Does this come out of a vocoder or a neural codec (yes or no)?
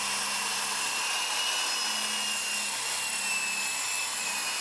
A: no